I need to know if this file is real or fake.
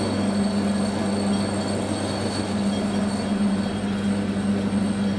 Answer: real